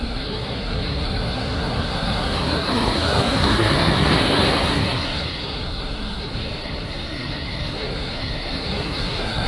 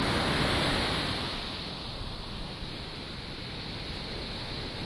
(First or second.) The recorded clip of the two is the second